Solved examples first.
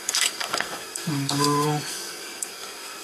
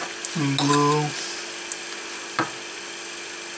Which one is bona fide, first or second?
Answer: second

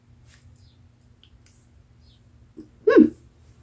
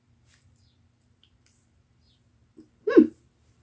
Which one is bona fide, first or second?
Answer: first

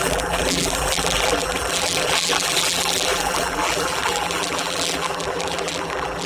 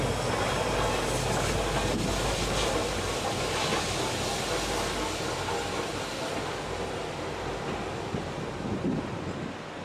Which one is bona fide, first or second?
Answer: second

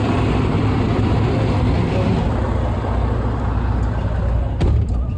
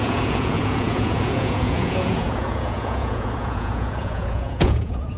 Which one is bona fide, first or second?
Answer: first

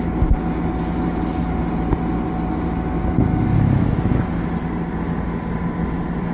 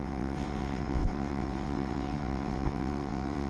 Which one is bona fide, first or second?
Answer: first